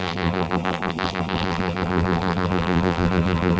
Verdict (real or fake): fake